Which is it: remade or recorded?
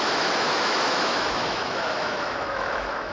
remade